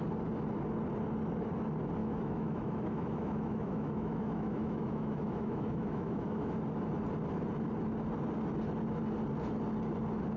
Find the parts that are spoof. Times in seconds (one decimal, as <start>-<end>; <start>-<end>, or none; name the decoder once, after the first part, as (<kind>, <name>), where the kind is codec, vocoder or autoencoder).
2.0-6.6 (autoencoder, DAC-VAE)